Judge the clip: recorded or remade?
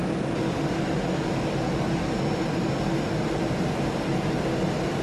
recorded